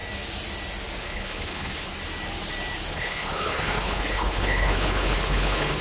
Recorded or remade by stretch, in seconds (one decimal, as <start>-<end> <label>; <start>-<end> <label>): 0.0-1.0 recorded; 1.0-1.9 remade; 1.9-2.9 recorded; 2.9-5.8 remade